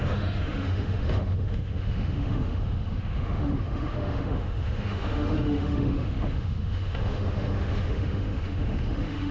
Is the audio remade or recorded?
remade